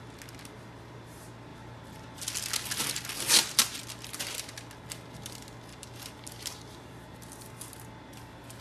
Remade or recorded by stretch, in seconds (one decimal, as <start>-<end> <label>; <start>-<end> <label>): 0.0-5.7 recorded; 5.7-7.3 remade; 7.3-8.6 recorded